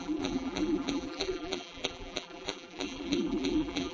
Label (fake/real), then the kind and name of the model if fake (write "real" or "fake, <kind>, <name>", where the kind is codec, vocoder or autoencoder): fake, vocoder, BigVGAN v2